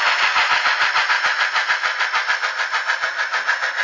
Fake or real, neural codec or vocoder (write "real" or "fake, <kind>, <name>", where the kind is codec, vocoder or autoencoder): real